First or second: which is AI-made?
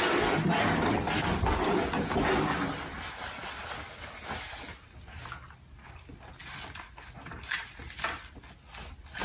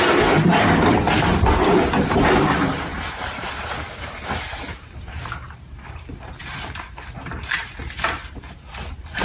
second